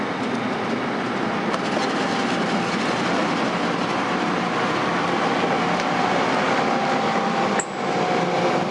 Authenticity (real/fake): real